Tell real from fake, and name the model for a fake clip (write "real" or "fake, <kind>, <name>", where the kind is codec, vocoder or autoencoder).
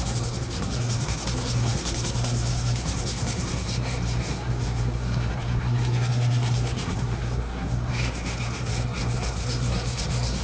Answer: fake, codec, SNAC